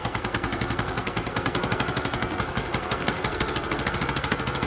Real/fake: fake